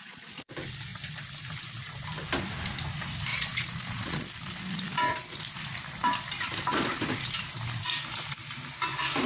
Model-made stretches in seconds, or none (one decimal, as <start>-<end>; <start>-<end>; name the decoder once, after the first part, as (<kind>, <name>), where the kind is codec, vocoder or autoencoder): 0.0-0.5 (vocoder, Vocos); 3.3-4.3